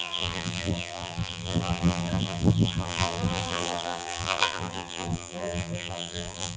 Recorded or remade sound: remade